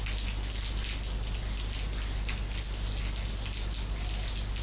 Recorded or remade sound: recorded